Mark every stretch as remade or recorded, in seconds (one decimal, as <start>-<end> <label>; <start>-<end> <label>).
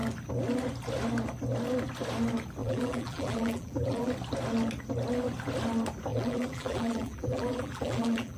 0.0-2.6 recorded; 2.6-4.1 remade; 4.1-6.1 recorded; 6.1-8.4 remade